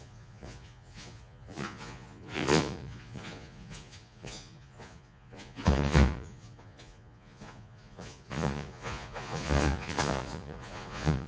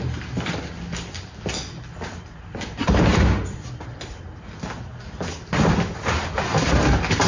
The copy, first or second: first